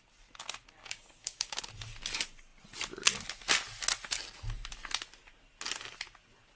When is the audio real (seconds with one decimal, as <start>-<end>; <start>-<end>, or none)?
0.0-0.8; 1.6-6.6